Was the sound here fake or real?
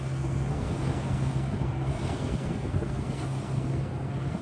fake